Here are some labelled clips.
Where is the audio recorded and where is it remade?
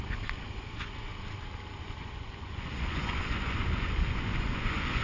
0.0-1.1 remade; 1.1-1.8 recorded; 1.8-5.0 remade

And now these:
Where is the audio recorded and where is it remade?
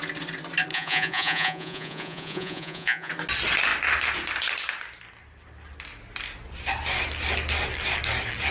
0.0-0.7 recorded; 0.7-3.1 remade; 3.1-8.5 recorded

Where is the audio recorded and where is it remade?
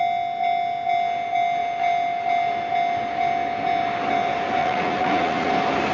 0.0-4.6 recorded; 4.6-5.5 remade; 5.5-5.9 recorded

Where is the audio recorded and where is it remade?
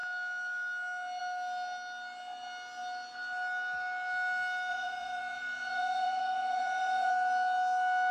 0.0-4.7 recorded; 4.7-7.1 remade; 7.1-8.1 recorded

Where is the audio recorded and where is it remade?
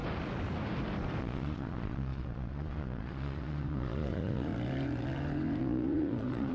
0.0-1.2 recorded; 1.2-4.5 remade; 4.5-5.6 recorded; 5.6-6.5 remade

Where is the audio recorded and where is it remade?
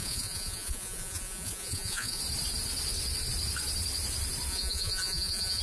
0.0-2.2 remade; 2.2-4.5 recorded; 4.5-5.6 remade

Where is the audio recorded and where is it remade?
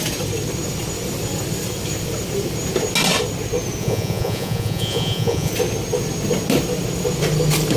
0.0-3.8 recorded; 3.8-5.5 remade; 5.5-7.8 recorded